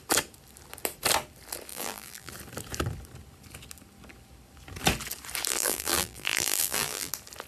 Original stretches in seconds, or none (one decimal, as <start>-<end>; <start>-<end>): 0.0-1.7; 2.3-5.5; 7.1-7.5